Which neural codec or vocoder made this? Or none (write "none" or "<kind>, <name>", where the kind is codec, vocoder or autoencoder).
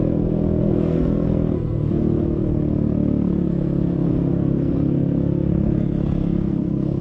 codec, SNAC